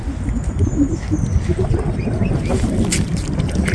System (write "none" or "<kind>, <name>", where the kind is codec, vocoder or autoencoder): none